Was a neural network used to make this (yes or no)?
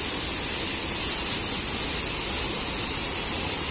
no